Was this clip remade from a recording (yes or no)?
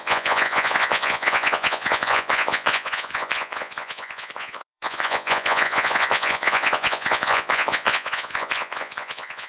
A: yes